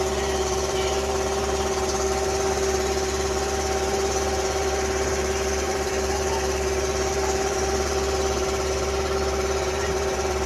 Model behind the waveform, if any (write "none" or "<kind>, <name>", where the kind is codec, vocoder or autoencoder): vocoder, BigVGAN v2